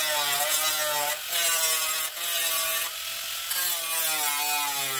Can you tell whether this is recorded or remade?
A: recorded